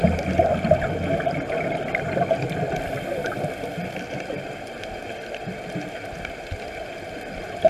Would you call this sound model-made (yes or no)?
no